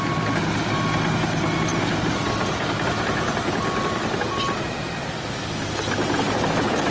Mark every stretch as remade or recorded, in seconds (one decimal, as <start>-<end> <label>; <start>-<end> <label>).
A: 0.0-1.7 recorded; 1.7-4.2 remade; 4.2-6.9 recorded